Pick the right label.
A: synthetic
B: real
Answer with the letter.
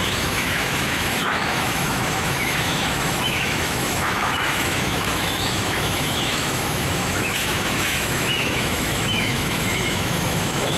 A